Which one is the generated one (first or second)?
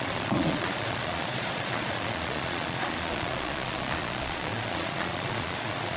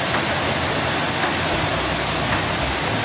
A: first